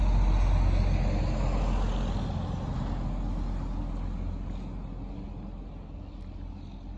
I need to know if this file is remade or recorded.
recorded